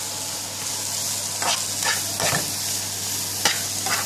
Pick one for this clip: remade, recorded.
recorded